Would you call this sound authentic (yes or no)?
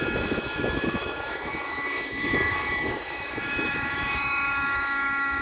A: no